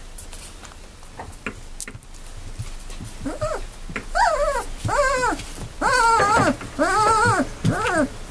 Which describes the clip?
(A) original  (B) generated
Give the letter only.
A